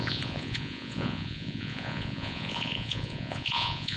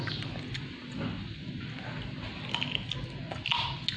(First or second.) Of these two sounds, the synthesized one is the first